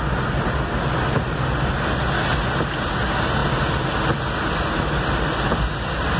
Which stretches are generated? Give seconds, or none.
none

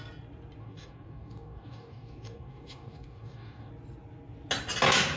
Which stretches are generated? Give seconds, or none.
0.6-3.7 (codec, DAC)

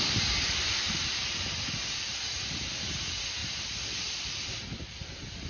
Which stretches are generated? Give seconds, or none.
3.4-5.1 (vocoder, BigVGAN v2)

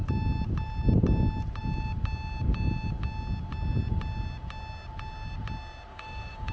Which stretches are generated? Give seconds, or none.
5.9-6.5 (codec, DAC)

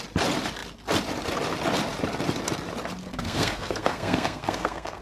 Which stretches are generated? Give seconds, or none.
3.0-5.0 (codec, SNAC)

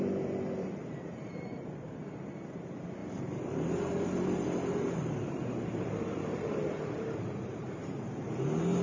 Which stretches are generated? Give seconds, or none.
0.8-2.0 (vocoder, BigVGAN v2); 3.0-8.3

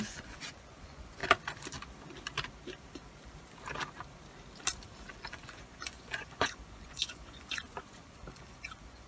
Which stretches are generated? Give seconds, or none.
0.0-1.2 (vocoder, Vocos); 5.3-9.1